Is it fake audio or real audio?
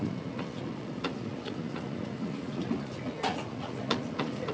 fake